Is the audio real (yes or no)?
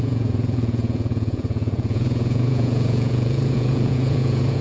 no